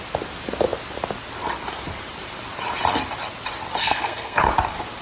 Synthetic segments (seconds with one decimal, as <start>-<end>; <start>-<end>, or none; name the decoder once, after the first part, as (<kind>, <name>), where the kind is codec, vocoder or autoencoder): 3.8-4.4 (codec, SNAC)